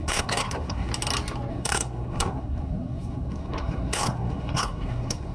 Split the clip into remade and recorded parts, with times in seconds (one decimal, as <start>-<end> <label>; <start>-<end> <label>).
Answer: 0.0-0.9 remade; 0.9-1.5 recorded; 1.5-5.3 remade